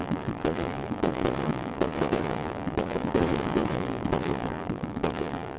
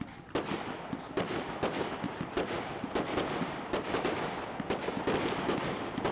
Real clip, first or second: second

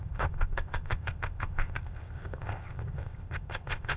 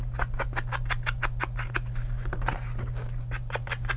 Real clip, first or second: second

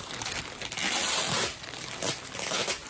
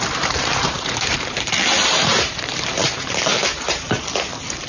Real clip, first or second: first